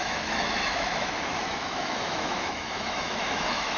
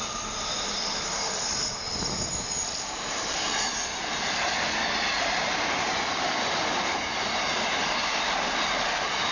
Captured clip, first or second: second